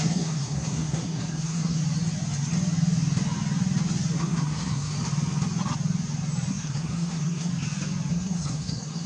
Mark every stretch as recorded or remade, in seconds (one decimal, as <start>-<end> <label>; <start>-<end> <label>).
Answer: 0.0-1.8 remade; 1.8-4.2 recorded; 4.2-4.9 remade; 4.9-6.5 recorded; 6.5-7.5 remade; 7.5-8.1 recorded; 8.1-9.1 remade

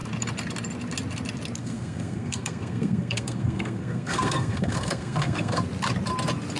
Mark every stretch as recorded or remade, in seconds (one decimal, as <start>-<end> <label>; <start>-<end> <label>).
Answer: 0.0-1.6 recorded; 1.6-5.6 remade; 5.6-6.6 recorded

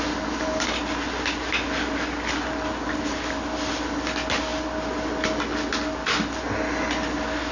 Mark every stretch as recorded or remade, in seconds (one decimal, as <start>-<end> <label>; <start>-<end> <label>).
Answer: 0.0-7.5 recorded

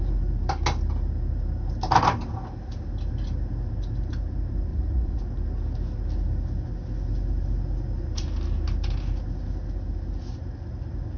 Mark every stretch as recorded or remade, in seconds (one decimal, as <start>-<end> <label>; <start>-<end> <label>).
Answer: 0.0-4.7 recorded; 4.7-5.2 remade; 5.2-11.2 recorded

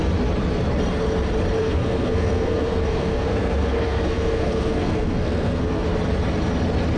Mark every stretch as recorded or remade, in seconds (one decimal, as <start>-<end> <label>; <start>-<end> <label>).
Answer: 0.0-1.6 recorded; 1.6-5.8 remade; 5.8-7.0 recorded

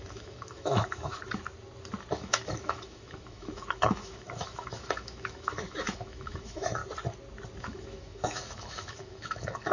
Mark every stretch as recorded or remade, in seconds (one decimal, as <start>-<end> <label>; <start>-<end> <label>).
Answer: 0.0-1.1 remade; 1.1-2.1 recorded; 2.1-6.8 remade; 6.8-7.6 recorded; 7.6-9.7 remade

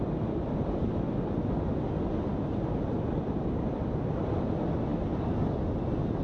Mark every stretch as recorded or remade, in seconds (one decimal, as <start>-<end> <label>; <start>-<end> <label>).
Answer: 0.0-6.2 recorded

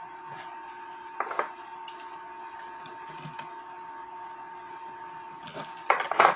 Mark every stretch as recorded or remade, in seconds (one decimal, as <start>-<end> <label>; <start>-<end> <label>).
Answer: 0.0-6.4 recorded